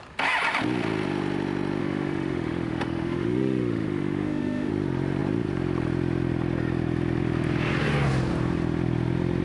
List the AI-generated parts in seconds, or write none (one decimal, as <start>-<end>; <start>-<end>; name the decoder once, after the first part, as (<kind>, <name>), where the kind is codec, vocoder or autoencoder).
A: 1.8-4.7 (autoencoder, DAC-VAE)

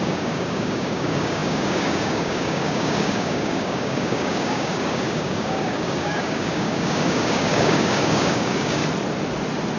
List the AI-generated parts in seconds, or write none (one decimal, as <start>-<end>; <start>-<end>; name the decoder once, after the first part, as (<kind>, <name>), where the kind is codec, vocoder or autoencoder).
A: 0.0-8.8 (codec, DAC)

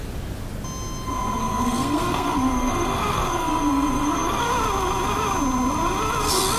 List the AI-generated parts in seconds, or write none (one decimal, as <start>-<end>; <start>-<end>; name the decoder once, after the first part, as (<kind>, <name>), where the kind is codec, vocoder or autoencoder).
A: 1.4-4.4 (codec, SNAC)